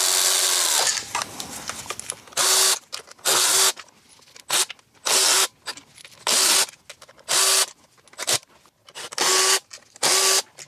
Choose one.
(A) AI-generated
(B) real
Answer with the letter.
B